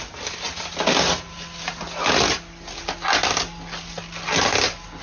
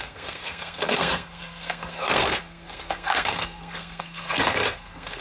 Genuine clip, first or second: first